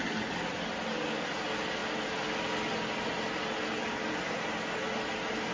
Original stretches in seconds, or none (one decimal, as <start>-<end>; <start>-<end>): 0.0-5.5